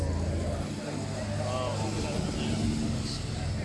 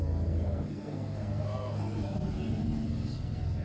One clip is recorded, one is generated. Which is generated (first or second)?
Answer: second